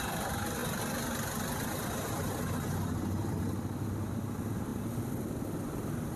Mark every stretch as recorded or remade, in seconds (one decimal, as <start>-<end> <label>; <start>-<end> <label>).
0.0-6.2 recorded